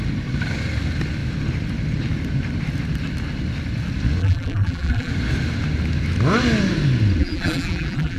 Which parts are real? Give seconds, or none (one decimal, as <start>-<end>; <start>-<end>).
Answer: 0.0-4.2; 5.1-7.2